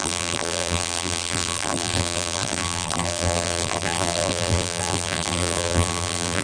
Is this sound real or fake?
fake